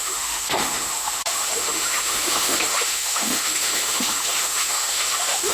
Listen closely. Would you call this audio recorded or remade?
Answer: remade